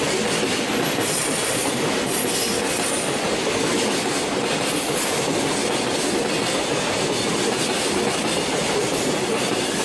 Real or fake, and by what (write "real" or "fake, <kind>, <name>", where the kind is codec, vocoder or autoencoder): real